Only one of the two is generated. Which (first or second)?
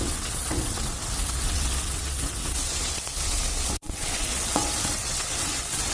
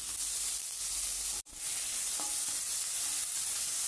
first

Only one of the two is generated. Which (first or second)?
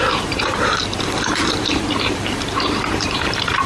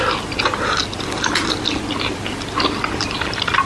first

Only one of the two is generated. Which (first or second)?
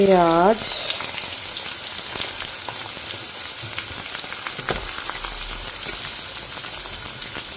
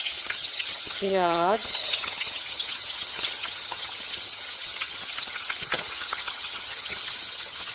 second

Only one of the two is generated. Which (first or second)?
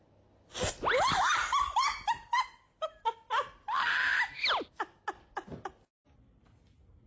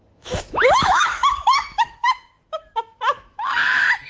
second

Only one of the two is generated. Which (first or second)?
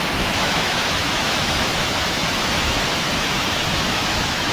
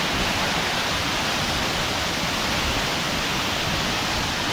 first